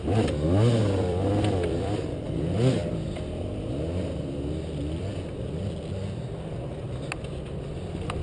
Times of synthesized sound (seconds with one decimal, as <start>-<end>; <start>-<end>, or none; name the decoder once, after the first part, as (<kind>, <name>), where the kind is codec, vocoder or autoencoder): 0.8-2.3 (vocoder, BigVGAN v2)